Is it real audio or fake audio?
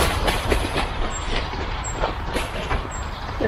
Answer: fake